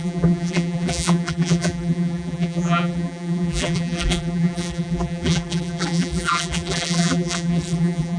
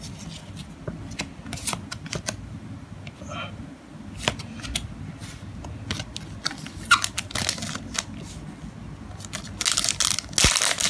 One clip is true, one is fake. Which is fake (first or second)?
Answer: first